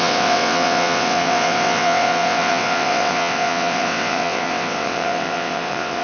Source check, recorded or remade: remade